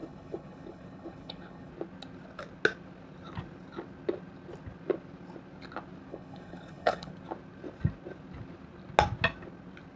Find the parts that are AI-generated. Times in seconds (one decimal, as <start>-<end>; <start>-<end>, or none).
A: 0.0-1.7; 6.1-7.1